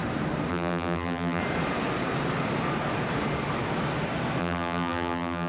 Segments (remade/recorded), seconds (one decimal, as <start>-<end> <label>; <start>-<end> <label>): 0.0-0.5 recorded; 0.5-1.4 remade; 1.4-4.4 recorded; 4.4-5.5 remade